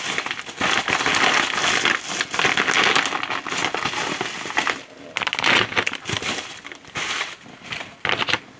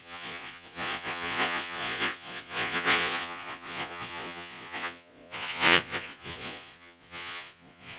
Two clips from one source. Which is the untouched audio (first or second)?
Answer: first